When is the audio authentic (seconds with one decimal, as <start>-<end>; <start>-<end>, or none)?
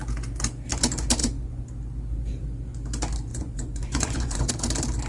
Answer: 0.0-1.2; 1.7-3.3; 4.5-5.1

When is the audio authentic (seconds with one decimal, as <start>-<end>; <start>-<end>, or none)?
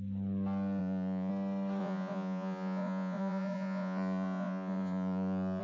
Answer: 0.0-0.8; 1.3-1.8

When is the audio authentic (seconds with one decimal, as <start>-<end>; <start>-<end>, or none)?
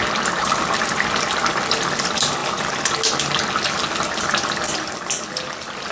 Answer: 0.0-5.9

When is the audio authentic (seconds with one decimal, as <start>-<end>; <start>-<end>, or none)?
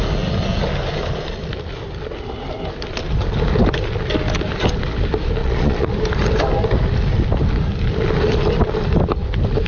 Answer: 0.0-5.4; 5.9-9.7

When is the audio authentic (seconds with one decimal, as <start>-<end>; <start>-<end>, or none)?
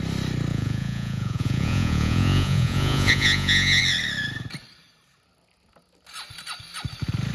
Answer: 0.0-0.5; 3.8-7.3